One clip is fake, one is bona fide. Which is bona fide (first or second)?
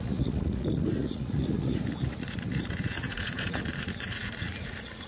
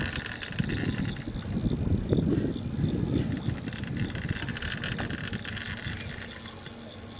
second